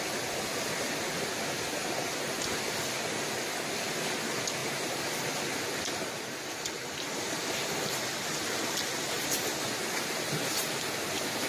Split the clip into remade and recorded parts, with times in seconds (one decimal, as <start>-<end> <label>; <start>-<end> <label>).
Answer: 0.0-11.5 recorded